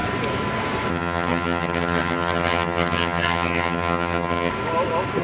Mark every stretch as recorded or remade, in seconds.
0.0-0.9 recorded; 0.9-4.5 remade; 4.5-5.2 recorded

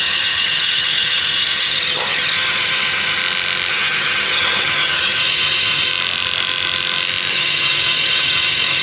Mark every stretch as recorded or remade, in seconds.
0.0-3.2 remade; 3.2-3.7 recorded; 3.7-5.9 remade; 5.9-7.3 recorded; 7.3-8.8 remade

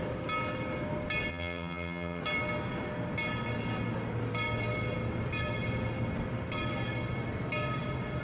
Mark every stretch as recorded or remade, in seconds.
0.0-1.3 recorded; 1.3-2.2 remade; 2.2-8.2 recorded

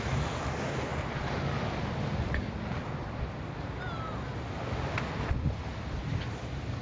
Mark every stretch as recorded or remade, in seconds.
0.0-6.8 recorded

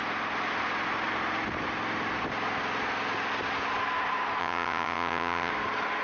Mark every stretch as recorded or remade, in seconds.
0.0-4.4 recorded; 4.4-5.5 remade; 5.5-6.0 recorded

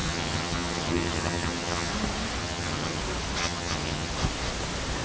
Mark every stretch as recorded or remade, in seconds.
0.0-1.9 remade; 1.9-2.4 recorded; 2.4-3.0 remade; 3.0-3.4 recorded; 3.4-4.1 remade; 4.1-5.0 recorded

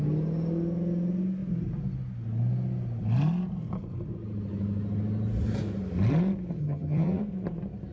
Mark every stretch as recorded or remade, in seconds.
0.0-6.6 recorded; 6.6-7.2 remade; 7.2-7.9 recorded

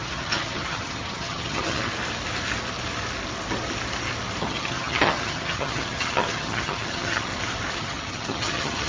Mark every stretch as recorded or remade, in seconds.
0.0-1.9 remade; 1.9-4.4 recorded; 4.4-7.3 remade; 7.3-7.8 recorded; 7.8-8.9 remade